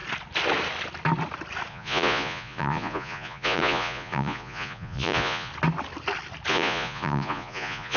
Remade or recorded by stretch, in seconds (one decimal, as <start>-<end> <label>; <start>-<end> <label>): 0.0-1.7 recorded; 1.7-5.5 remade; 5.5-6.5 recorded; 6.5-8.0 remade